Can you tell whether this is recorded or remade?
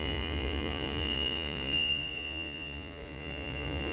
remade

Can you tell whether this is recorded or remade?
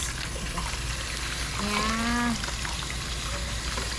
recorded